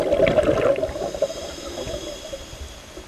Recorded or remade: recorded